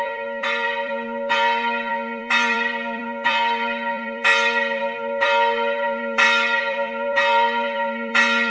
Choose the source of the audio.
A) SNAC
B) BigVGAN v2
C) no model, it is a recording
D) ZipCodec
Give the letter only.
B